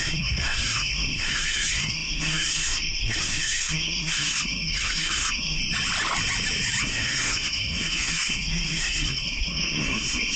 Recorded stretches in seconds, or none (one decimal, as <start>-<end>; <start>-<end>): 5.6-6.8